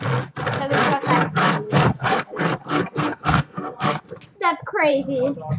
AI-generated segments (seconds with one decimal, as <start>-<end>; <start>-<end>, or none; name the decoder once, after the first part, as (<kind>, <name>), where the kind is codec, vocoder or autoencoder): 1.4-4.0 (codec, SNAC)